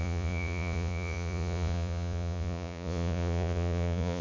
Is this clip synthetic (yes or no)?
yes